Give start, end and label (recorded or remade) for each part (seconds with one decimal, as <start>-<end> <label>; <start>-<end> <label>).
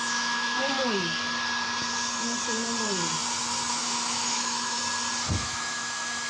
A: 0.0-0.8 remade; 0.8-3.7 recorded; 3.7-4.8 remade; 4.8-5.4 recorded; 5.4-6.3 remade